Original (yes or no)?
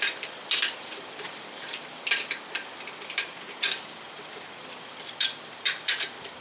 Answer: no